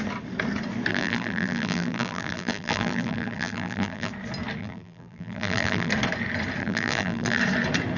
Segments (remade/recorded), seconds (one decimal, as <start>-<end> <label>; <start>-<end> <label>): 0.0-0.9 recorded; 0.9-4.1 remade; 4.1-4.6 recorded; 4.6-5.9 remade; 5.9-6.6 recorded; 6.6-7.4 remade; 7.4-8.0 recorded